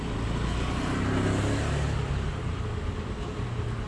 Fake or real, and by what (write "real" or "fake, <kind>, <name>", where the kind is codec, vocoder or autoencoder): real